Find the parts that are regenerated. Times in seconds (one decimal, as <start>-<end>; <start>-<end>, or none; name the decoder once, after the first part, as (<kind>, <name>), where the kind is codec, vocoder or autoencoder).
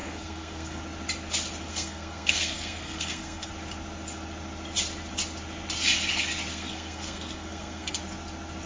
0.0-0.8 (codec, SNAC); 1.7-3.5; 6.5-8.0